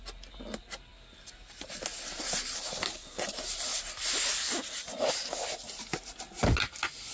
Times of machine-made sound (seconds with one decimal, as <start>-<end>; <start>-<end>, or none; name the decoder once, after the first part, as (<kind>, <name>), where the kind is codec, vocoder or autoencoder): none